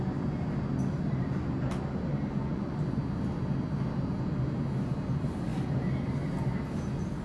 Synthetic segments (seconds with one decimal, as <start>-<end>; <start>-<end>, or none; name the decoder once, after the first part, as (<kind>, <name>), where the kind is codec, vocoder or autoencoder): 2.1-2.7 (vocoder, Vocos)